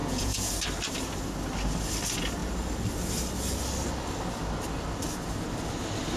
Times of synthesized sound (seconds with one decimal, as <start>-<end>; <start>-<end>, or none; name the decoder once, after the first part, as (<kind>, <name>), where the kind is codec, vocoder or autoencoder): 0.0-0.5 (vocoder, Vocos)